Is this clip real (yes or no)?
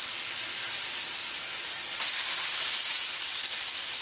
yes